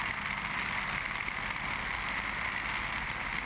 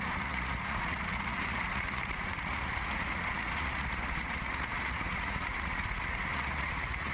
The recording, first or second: first